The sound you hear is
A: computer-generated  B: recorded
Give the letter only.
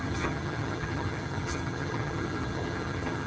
A